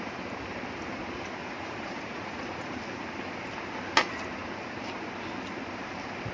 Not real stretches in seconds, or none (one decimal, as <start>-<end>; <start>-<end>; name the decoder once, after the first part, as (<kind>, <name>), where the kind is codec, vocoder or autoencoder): 1.4-2.8 (vocoder, Vocos)